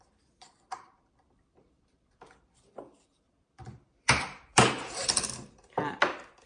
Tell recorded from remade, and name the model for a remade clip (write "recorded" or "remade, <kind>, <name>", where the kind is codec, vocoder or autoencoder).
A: remade, vocoder, BigVGAN v2